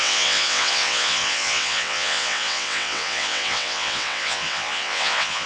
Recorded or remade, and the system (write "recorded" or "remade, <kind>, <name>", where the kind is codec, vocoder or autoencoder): remade, vocoder, WaveNeXt